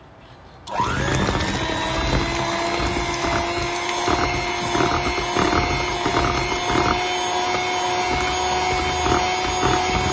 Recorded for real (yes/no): yes